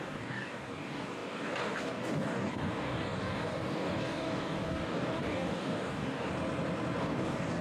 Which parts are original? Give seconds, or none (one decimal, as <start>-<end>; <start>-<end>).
6.3-7.0